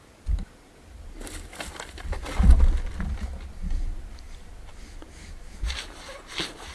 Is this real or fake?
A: real